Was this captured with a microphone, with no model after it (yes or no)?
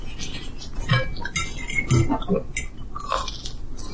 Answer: yes